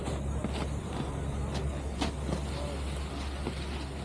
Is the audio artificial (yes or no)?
no